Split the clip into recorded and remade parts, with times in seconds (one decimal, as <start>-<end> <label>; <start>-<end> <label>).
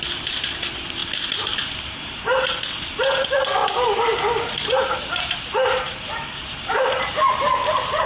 0.0-2.3 remade; 2.3-3.2 recorded; 3.2-8.1 remade